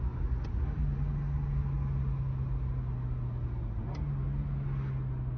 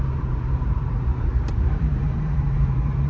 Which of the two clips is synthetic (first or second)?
second